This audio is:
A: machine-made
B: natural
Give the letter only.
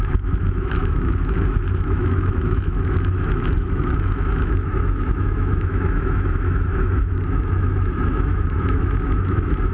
A